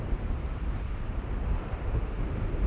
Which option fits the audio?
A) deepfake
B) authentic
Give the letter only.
B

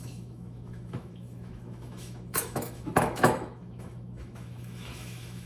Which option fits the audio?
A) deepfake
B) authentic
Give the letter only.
A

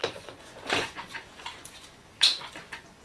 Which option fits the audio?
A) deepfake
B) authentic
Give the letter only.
A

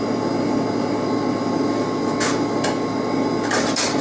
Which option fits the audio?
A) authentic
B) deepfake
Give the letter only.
A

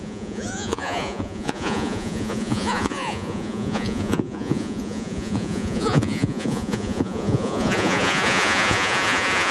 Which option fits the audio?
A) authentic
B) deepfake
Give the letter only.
B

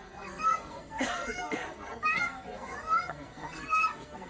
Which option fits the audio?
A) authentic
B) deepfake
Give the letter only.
B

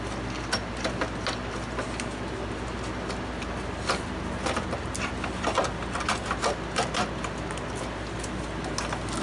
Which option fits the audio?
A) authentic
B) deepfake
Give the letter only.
A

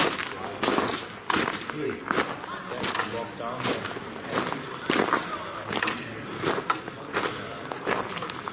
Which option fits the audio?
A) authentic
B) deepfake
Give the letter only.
A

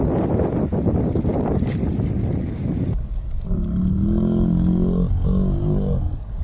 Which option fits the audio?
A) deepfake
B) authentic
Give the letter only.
B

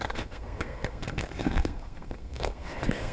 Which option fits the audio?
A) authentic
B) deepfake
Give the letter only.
B